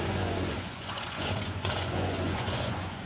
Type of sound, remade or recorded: remade